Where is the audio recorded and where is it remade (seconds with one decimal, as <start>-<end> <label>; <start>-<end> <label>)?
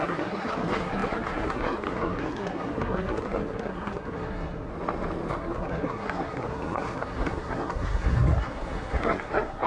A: 0.0-4.7 remade; 4.7-5.3 recorded; 5.3-9.7 remade